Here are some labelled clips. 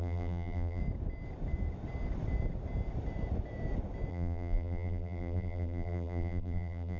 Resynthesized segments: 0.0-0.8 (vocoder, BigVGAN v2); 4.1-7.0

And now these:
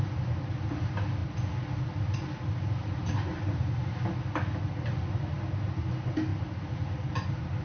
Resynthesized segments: 6.3-7.1 (vocoder, BigVGAN v2)